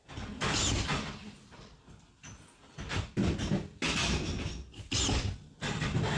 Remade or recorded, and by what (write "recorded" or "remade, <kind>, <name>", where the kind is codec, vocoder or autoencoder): recorded